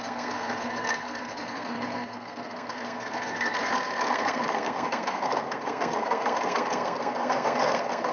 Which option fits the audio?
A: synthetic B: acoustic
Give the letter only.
A